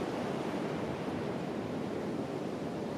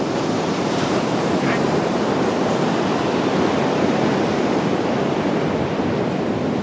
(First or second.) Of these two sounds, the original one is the first